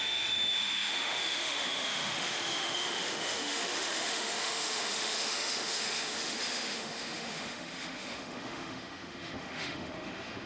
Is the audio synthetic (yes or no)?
yes